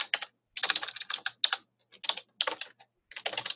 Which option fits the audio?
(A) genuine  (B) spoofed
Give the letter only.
A